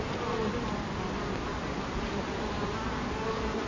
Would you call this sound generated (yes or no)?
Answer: no